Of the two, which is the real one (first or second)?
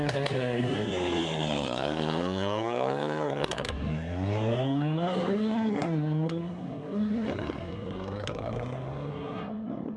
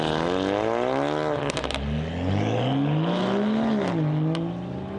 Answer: second